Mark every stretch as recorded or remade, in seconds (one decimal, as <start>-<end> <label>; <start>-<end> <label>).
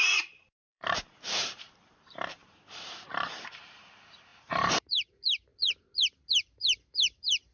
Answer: 0.0-7.5 remade